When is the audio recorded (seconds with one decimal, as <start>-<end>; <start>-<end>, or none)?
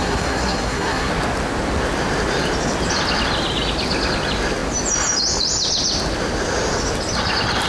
1.1-7.7